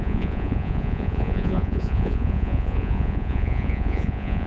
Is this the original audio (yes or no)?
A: no